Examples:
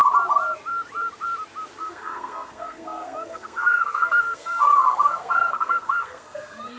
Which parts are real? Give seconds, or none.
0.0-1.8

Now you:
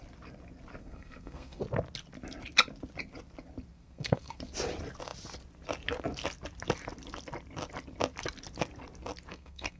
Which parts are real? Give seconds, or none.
0.0-0.8; 1.6-3.7; 4.4-9.3